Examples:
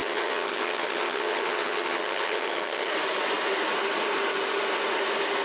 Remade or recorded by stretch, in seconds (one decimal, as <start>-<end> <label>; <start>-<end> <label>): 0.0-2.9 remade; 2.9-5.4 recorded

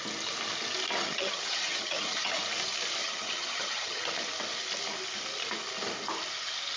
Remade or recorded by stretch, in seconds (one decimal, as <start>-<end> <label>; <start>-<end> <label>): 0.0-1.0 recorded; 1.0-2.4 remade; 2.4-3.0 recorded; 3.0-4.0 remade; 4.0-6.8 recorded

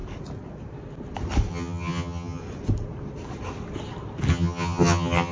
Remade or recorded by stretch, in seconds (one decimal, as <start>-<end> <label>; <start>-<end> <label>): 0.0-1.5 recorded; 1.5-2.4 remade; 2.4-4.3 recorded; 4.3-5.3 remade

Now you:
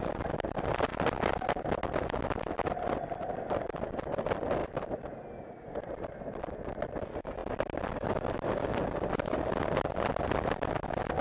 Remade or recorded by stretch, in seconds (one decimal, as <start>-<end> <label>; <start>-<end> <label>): 0.0-11.2 recorded

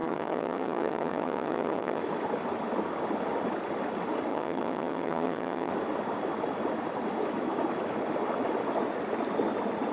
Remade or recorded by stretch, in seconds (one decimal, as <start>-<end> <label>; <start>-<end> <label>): 0.0-2.0 remade; 2.0-4.3 recorded; 4.3-5.7 remade; 5.7-9.9 recorded

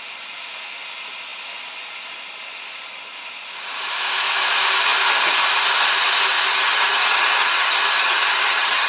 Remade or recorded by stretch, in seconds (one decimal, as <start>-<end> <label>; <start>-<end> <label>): 0.0-6.5 recorded; 6.5-8.9 remade

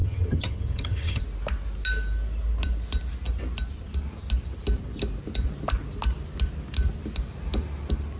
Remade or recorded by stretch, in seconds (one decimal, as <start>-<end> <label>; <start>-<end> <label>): 0.0-1.2 remade; 1.2-8.2 recorded